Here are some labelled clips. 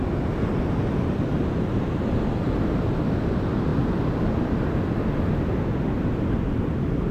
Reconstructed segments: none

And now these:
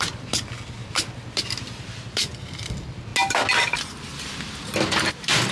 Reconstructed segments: 0.0-3.1 (vocoder, BigVGAN v2); 5.1-5.5